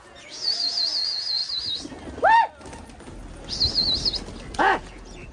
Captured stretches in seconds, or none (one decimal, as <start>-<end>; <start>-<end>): 1.4-4.6